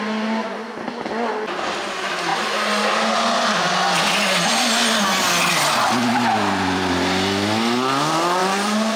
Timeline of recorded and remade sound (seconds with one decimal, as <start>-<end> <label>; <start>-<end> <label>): 0.0-8.4 recorded; 8.4-9.0 remade